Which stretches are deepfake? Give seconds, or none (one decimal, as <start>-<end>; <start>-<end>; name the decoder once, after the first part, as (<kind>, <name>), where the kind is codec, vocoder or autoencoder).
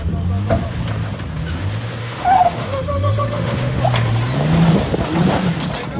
2.0-3.8 (autoencoder, DAC-VAE)